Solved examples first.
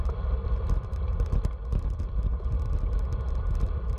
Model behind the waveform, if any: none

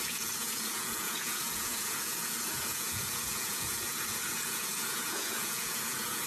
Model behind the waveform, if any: vocoder, Vocos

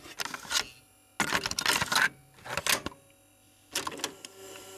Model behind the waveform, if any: none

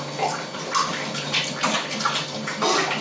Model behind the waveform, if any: none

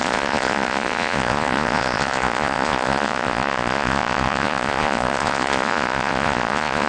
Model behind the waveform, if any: vocoder, Vocos